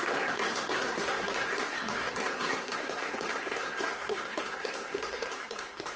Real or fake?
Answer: fake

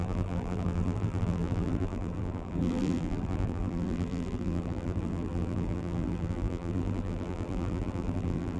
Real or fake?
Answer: fake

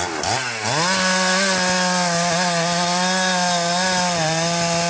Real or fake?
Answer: real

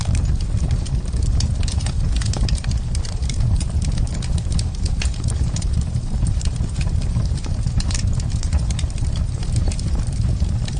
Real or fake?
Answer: fake